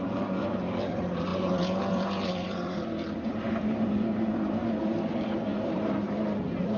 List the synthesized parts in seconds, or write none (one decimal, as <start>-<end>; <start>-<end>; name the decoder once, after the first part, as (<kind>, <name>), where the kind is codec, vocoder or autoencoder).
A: 0.0-6.8 (vocoder, BigVGAN v2)